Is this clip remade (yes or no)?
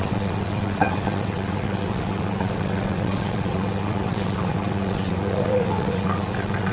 yes